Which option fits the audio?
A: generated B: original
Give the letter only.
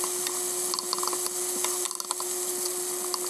B